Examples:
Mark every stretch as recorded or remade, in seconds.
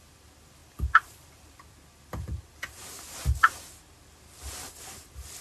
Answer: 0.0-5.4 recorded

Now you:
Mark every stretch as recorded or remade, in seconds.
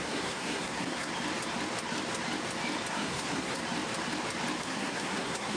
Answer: 0.0-1.1 remade; 1.1-2.9 recorded; 2.9-3.6 remade; 3.6-4.6 recorded; 4.6-5.6 remade